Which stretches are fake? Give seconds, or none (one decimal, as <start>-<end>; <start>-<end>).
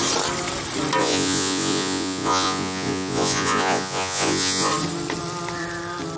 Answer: 1.0-4.7